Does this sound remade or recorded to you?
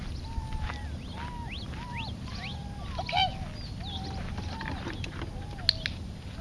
recorded